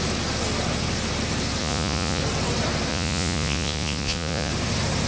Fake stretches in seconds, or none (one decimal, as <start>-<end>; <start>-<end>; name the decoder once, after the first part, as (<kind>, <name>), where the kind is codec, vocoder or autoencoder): 1.6-2.2 (vocoder, Vocos); 2.9-4.5